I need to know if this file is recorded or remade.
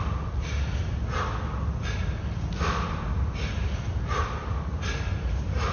recorded